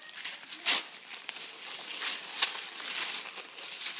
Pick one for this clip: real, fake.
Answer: real